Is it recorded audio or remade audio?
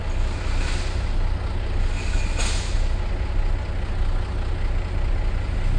recorded